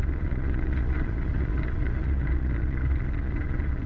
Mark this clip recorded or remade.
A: remade